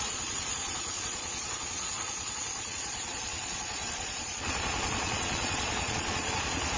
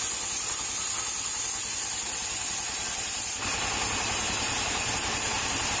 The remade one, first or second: first